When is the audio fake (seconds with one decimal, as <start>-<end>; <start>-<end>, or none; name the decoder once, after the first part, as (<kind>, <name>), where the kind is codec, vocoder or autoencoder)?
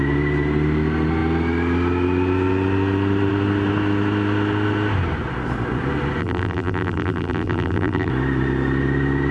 6.2-8.1 (vocoder, BigVGAN v2)